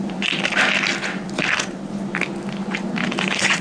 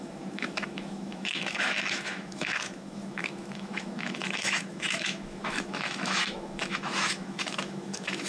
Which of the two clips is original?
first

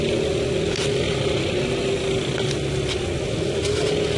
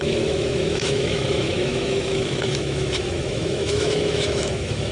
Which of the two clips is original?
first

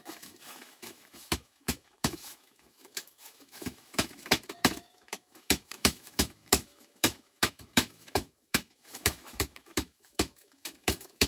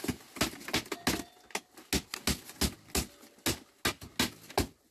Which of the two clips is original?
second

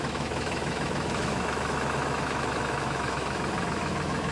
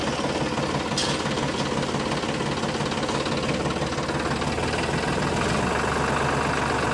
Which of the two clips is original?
second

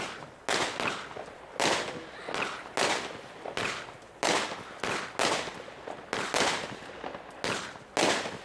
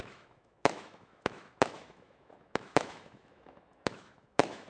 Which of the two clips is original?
first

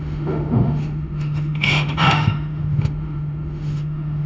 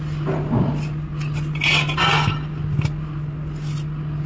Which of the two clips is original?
second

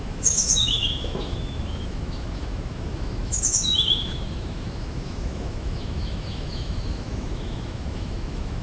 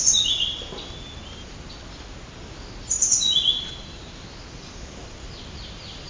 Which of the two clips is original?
second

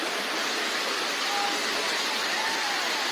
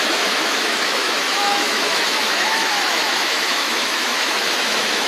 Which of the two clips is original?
first